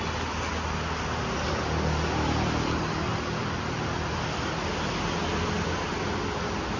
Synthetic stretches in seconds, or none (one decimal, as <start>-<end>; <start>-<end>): none